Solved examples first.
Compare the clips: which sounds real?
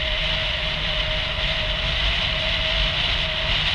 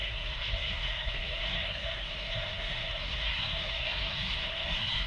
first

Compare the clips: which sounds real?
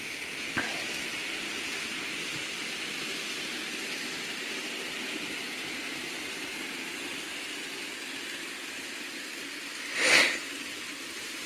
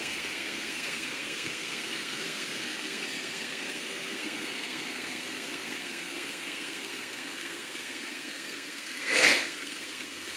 first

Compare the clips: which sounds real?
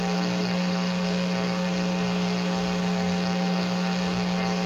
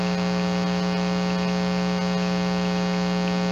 second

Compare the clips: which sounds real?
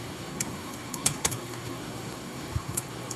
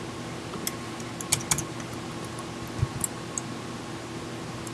second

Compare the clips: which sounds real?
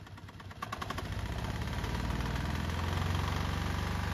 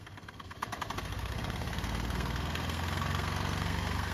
first